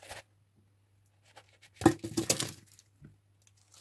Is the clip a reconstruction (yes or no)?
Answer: no